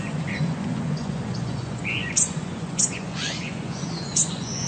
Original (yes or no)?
no